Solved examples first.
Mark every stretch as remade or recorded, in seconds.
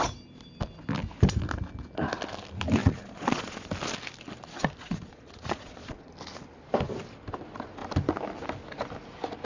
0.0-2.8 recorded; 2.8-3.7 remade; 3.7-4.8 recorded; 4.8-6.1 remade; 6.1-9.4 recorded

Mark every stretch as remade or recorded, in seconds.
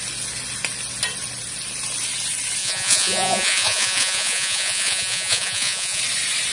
0.0-2.6 recorded; 2.6-6.0 remade; 6.0-6.5 recorded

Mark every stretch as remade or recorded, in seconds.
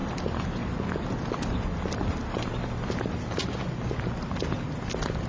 0.0-5.3 recorded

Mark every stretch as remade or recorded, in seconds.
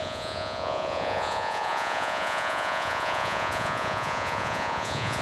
0.0-5.2 remade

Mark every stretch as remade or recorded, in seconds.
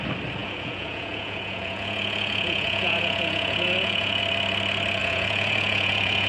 0.0-0.4 recorded; 0.4-4.2 remade; 4.2-5.0 recorded; 5.0-6.3 remade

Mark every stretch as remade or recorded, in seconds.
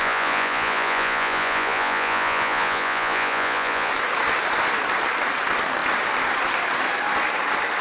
0.0-3.9 remade; 3.9-7.8 recorded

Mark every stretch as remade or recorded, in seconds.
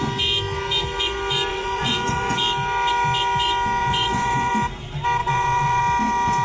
0.0-1.5 recorded; 1.5-2.4 remade; 2.4-3.8 recorded; 3.8-4.5 remade; 4.5-5.2 recorded; 5.2-5.8 remade; 5.8-6.4 recorded